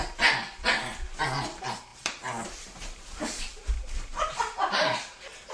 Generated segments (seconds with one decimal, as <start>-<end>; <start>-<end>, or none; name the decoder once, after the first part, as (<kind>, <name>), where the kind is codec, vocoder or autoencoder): 1.9-5.5 (vocoder, BigVGAN v2)